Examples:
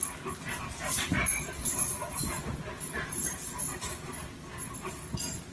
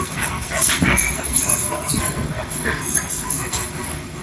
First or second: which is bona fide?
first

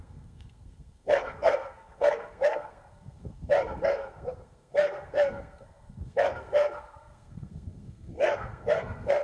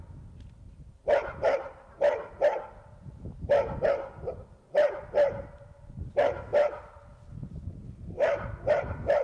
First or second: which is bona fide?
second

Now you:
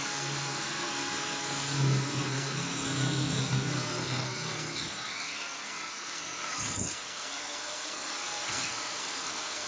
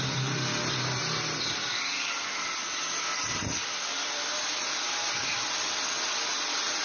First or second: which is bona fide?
second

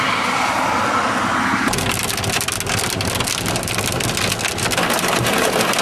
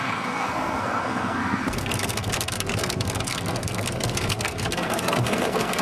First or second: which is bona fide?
first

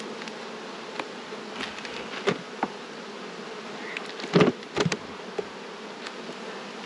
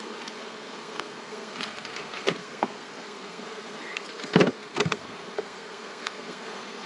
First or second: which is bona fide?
first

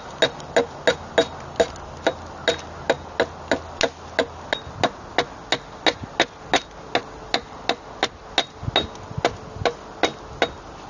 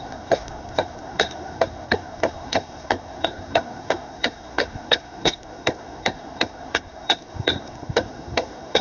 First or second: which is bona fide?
first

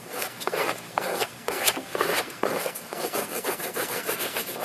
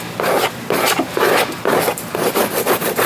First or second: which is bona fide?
second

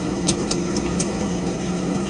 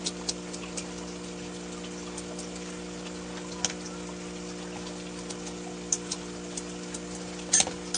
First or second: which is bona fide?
second